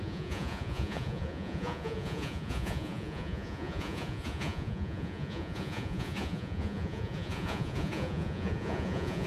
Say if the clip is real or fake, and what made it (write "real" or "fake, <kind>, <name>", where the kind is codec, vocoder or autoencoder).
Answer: fake, vocoder, Vocos